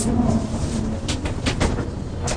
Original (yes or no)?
yes